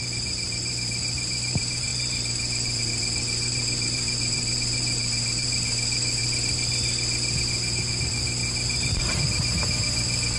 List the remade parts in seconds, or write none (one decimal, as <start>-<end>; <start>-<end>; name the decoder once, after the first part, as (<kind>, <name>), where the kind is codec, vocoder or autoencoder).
0.0-6.2 (vocoder, BigVGAN v2); 8.0-8.4; 9.2-10.4